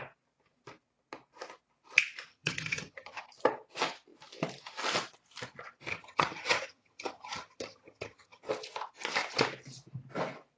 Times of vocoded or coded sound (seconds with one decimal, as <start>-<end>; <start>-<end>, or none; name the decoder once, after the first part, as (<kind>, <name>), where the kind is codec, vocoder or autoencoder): 2.3-3.2 (vocoder, HiFi-GAN); 5.9-8.5